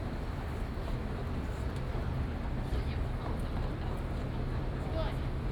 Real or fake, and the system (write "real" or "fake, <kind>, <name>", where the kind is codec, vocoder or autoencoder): real